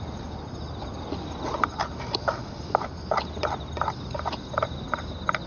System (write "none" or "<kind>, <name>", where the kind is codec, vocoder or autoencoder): none